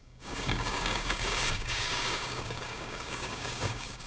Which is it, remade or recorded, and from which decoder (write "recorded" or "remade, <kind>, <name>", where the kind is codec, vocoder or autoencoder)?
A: remade, codec, DAC